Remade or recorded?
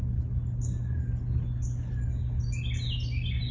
recorded